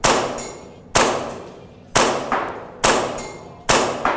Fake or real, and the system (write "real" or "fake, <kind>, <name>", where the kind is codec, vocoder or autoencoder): real